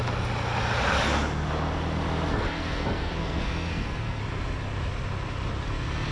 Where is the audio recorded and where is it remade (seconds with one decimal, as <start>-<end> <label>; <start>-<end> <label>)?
0.0-2.3 recorded; 2.3-4.2 remade; 4.2-6.1 recorded